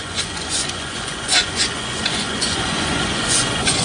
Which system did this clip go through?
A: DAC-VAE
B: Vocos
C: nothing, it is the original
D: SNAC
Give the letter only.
B